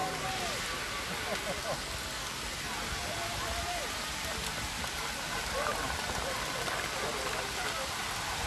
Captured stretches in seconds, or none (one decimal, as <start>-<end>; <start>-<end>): 0.0-8.5